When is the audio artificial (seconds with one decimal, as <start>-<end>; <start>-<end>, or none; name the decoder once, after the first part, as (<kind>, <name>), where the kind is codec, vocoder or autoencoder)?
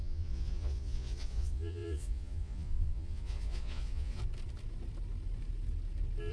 0.0-4.2 (vocoder, Vocos)